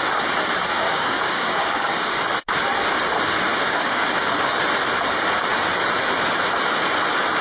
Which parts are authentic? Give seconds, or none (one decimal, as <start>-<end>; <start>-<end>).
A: 0.0-0.7; 2.2-3.5; 4.6-7.4